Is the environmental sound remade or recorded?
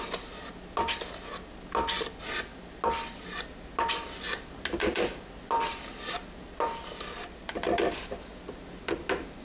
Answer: recorded